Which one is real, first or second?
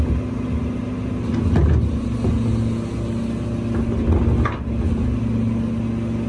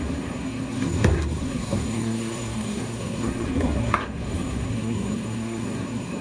first